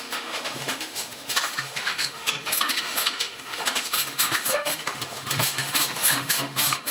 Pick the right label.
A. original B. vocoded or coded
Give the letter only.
B